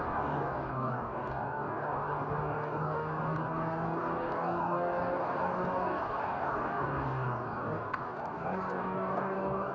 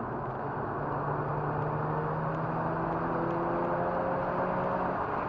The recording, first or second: second